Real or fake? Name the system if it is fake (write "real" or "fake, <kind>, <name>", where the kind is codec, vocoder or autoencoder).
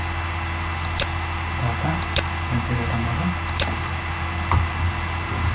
real